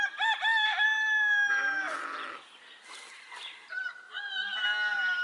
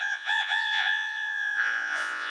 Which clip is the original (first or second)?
first